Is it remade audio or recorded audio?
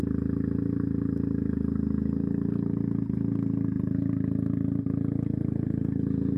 recorded